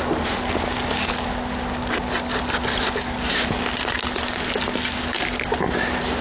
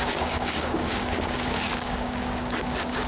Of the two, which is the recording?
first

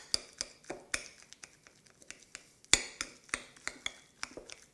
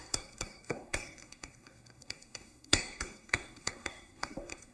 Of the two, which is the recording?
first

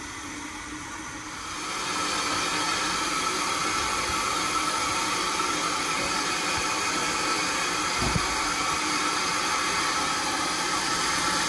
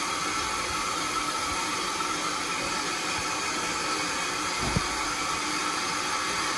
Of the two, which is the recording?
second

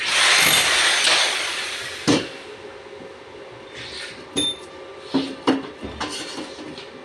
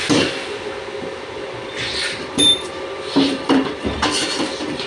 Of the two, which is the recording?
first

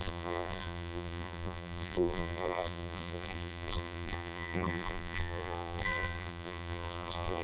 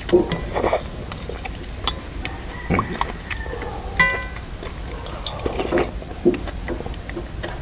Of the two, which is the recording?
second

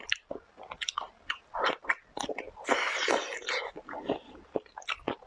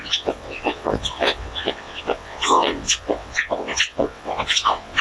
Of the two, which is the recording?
first